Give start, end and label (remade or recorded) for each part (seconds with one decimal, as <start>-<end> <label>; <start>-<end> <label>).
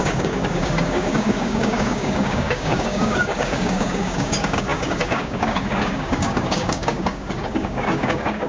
0.0-8.5 remade